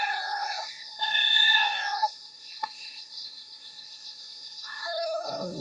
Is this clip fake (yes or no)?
yes